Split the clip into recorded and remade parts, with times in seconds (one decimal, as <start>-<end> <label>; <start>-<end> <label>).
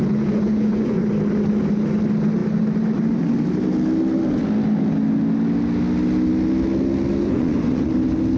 0.0-1.1 remade; 1.1-7.2 recorded; 7.2-7.9 remade; 7.9-8.4 recorded